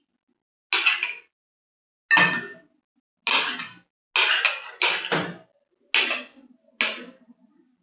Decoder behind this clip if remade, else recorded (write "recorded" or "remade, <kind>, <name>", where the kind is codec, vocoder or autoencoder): recorded